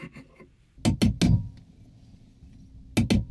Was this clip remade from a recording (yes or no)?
no